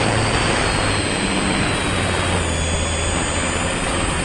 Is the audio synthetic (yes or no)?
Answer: no